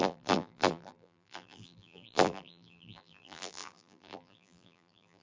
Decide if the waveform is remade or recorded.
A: remade